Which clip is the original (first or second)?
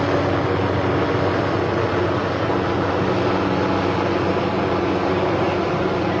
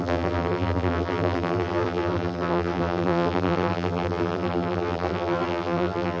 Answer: first